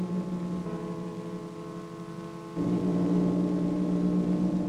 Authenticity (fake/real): real